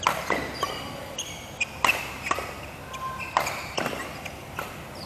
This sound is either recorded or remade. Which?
recorded